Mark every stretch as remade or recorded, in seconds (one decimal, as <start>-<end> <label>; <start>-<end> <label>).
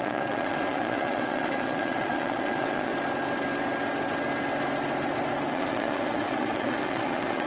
0.0-2.9 remade; 2.9-5.5 recorded; 5.5-7.5 remade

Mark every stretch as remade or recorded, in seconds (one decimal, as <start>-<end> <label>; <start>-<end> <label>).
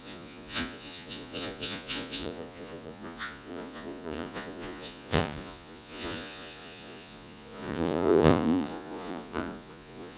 0.0-10.2 remade